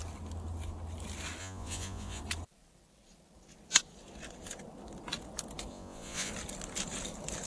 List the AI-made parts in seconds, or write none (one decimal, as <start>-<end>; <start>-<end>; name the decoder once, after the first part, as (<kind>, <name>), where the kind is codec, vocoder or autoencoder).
1.4-2.2 (vocoder, Vocos); 5.7-6.3